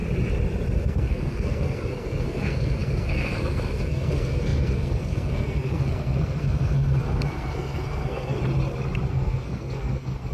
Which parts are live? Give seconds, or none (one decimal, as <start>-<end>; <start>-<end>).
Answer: 0.0-0.8; 8.4-9.1